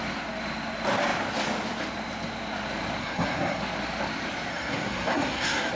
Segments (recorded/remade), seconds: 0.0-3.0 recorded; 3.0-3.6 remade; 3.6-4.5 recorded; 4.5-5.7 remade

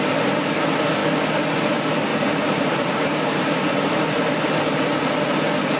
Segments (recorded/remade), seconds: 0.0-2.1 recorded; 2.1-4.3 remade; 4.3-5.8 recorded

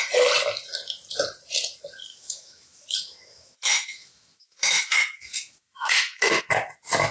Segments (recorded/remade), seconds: 0.0-2.1 recorded; 2.1-6.4 remade; 6.4-7.1 recorded

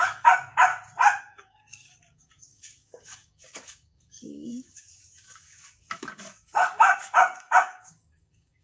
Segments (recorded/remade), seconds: 0.0-0.7 remade; 0.7-1.2 recorded; 1.2-8.6 remade

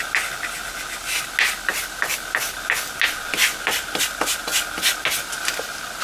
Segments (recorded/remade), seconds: 0.0-6.0 recorded